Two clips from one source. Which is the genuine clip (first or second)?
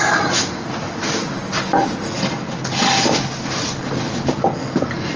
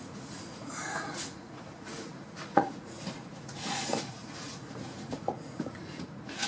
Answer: first